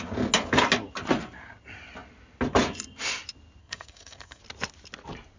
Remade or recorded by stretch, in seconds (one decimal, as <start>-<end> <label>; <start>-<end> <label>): 0.0-3.6 recorded; 3.6-4.4 remade; 4.4-5.4 recorded